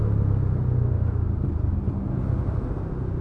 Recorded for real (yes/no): yes